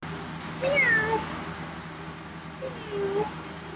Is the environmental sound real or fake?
real